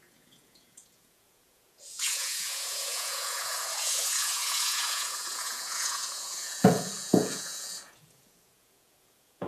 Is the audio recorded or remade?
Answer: remade